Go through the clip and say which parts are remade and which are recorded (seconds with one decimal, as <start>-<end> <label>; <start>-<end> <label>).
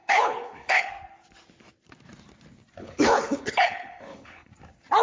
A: 0.0-0.9 remade; 0.9-2.8 recorded; 2.8-4.5 remade; 4.5-5.0 recorded